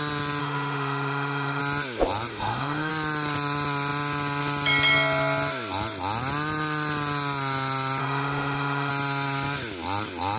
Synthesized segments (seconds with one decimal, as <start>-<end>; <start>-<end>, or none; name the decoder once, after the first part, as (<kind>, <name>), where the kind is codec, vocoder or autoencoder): 0.4-1.6 (autoencoder, DAC-VAE); 2.3-2.9; 8.0-8.9

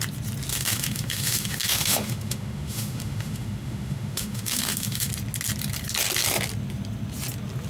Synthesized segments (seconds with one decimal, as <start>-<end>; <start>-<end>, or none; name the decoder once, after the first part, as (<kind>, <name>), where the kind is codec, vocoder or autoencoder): 0.5-5.1 (autoencoder, DAC-VAE)

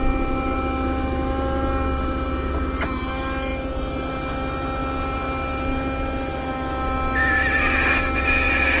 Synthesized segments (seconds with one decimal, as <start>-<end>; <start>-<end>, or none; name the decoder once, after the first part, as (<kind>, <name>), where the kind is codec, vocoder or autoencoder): none

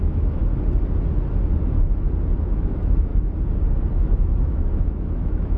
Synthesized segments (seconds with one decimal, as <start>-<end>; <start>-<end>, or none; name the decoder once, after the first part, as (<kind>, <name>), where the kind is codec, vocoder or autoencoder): 0.0-0.4 (autoencoder, DAC-VAE); 2.4-3.1; 4.0-5.6

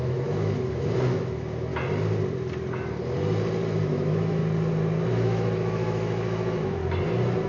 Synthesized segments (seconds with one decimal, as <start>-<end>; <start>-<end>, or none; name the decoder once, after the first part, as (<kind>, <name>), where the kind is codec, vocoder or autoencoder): 0.0-1.7 (autoencoder, DAC-VAE); 3.8-4.4; 5.1-6.8

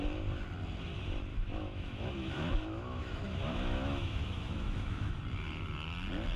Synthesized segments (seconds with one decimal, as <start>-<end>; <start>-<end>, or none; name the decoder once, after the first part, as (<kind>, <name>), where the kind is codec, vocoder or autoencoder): 1.3-5.1 (autoencoder, DAC-VAE)

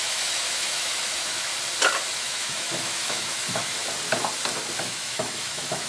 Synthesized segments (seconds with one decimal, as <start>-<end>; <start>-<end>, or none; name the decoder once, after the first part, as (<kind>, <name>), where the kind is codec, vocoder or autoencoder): 0.0-1.5 (autoencoder, DAC-VAE); 2.2-3.8; 4.8-5.9

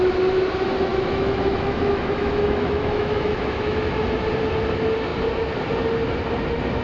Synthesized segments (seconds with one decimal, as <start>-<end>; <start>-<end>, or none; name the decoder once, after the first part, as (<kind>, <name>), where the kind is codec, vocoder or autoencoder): 0.9-3.9 (autoencoder, DAC-VAE)